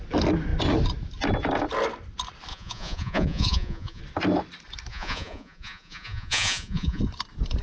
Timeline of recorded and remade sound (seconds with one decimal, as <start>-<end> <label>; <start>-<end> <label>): 0.0-2.5 recorded; 2.5-4.0 remade; 4.0-4.9 recorded; 4.9-7.0 remade; 7.0-7.6 recorded